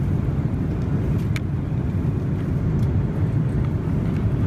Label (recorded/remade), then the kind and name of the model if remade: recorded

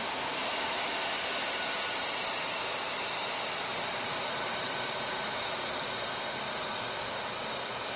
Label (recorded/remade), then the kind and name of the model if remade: recorded